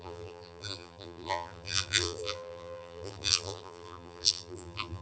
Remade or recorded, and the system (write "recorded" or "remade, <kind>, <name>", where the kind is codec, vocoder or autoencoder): remade, vocoder, BigVGAN v2